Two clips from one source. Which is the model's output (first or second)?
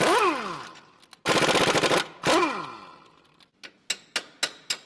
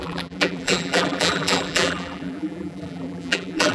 second